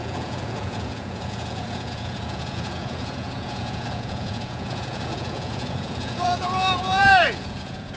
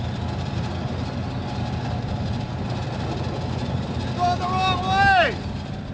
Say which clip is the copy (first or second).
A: first